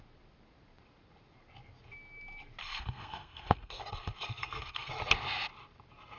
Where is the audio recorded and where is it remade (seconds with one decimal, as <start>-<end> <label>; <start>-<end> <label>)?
0.0-2.6 recorded; 2.6-4.9 remade; 4.9-6.2 recorded